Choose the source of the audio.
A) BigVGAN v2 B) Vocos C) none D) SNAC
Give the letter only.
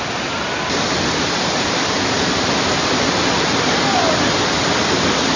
C